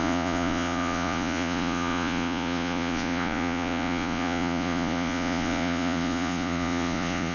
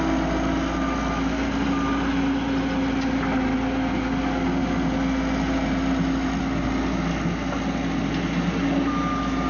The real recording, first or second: second